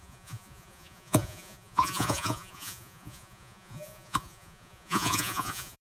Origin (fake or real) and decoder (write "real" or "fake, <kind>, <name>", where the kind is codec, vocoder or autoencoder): fake, vocoder, Vocos